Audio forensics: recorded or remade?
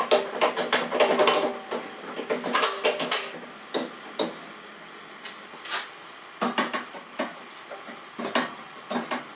recorded